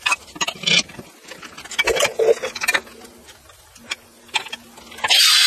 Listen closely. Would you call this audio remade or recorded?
recorded